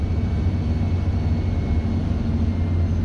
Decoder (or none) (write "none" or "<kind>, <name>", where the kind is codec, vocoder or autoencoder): none